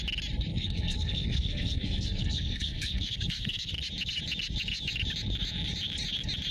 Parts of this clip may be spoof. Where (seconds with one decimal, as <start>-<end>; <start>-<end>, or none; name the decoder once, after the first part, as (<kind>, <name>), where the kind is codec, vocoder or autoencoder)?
0.5-3.7 (codec, SNAC)